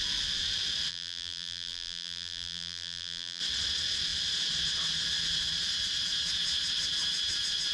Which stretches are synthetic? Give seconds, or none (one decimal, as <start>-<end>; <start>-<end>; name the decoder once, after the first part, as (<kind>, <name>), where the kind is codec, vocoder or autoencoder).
0.9-3.4 (vocoder, BigVGAN v2)